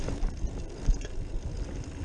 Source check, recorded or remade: recorded